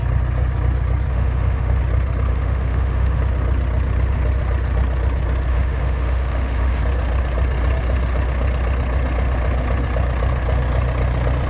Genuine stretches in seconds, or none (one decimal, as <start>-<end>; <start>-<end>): 0.0-1.1; 1.8-2.3; 3.2-5.5; 6.8-11.5